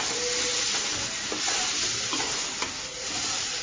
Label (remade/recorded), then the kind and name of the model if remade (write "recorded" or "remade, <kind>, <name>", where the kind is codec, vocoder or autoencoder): recorded